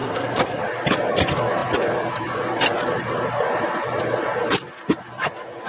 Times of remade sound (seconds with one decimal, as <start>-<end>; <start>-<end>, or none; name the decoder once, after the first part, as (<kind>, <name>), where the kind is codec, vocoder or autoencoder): 0.0-0.6 (codec, SNAC)